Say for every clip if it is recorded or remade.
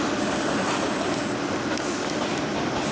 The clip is recorded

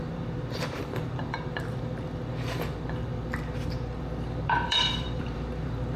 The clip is remade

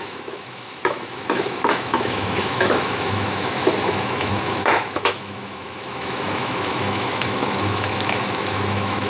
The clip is remade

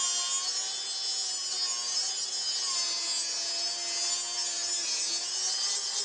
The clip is recorded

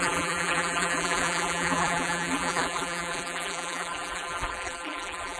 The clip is remade